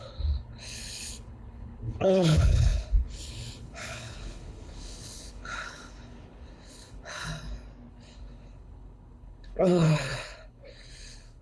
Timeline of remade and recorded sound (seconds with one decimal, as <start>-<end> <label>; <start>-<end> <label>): 0.0-7.3 remade; 7.3-7.9 recorded; 7.9-11.4 remade